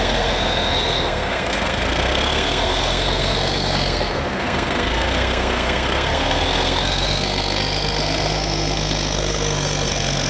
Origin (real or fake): fake